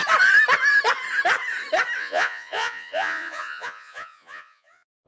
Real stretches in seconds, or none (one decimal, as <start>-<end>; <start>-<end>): 0.0-2.0